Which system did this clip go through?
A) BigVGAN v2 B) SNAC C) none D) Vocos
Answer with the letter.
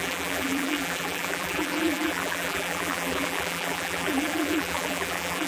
A